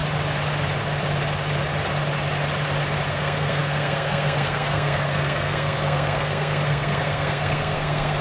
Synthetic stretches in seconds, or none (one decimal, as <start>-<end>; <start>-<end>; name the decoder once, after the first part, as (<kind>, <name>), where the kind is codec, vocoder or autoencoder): 3.1-8.2 (codec, SNAC)